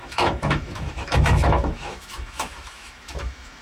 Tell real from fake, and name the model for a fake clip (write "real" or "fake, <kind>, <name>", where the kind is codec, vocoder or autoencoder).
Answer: fake, autoencoder, DAC-VAE